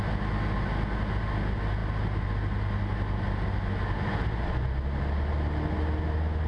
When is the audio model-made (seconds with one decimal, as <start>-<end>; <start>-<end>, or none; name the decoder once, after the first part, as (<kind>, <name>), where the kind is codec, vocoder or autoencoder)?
none